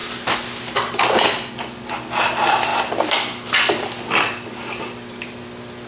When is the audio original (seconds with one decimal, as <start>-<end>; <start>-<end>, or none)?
0.0-5.9

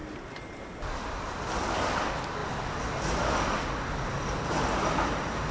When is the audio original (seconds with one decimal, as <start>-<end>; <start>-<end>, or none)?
1.2-5.5

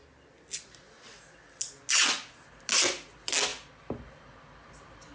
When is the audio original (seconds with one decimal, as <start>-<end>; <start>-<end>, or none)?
0.0-5.1

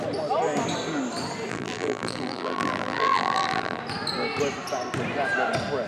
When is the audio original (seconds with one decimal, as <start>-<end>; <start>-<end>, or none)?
0.0-1.5; 3.8-5.9

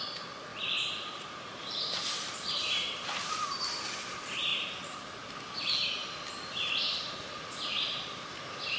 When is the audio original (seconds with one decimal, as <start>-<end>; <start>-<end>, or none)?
0.0-0.5; 3.1-8.8